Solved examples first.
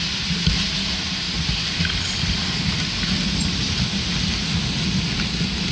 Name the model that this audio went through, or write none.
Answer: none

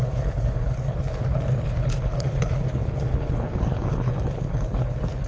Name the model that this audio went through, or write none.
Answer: codec, HILCodec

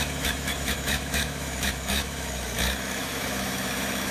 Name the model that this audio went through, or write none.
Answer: autoencoder, DAC-VAE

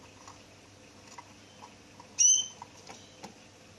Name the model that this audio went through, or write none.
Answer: none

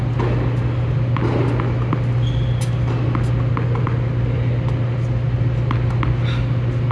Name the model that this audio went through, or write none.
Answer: none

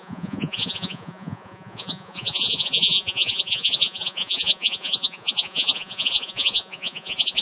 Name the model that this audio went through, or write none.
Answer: vocoder, Vocos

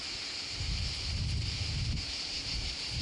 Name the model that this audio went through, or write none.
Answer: none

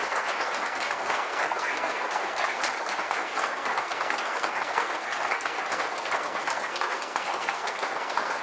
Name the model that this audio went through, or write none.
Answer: codec, SNAC